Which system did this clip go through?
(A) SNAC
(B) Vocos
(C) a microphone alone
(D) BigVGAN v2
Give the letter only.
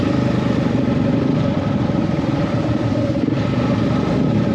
D